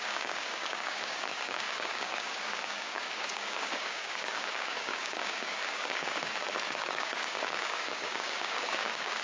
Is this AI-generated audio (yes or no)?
yes